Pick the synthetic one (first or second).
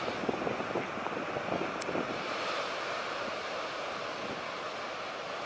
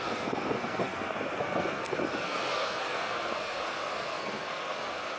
second